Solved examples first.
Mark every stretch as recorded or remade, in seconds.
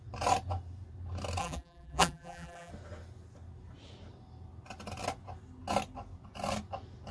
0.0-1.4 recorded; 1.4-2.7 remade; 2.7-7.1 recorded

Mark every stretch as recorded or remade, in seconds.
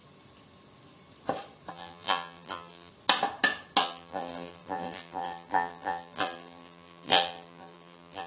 0.0-1.7 recorded; 1.7-2.9 remade; 2.9-3.8 recorded; 3.8-8.3 remade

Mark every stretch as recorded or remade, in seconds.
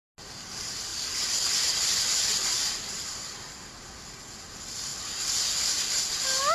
0.0-0.9 recorded; 0.9-3.5 remade; 3.5-6.5 recorded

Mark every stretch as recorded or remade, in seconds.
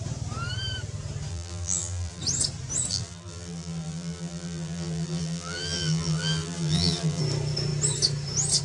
0.0-1.3 recorded; 1.3-2.2 remade; 2.2-2.9 recorded; 2.9-7.2 remade; 7.2-8.6 recorded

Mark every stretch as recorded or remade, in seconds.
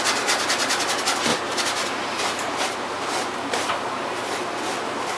0.0-1.3 recorded; 1.3-4.4 remade; 4.4-5.2 recorded